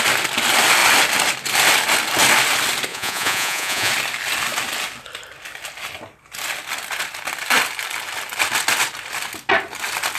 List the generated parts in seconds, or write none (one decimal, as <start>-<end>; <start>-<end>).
2.9-3.9